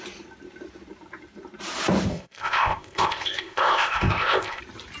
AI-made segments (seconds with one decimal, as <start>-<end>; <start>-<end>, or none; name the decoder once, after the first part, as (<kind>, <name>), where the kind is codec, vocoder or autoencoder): 2.1-4.6 (codec, ZipCodec)